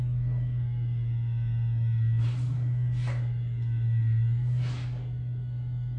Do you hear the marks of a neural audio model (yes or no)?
yes